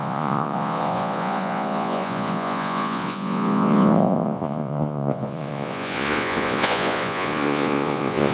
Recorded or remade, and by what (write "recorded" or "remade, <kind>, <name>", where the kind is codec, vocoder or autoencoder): remade, vocoder, Vocos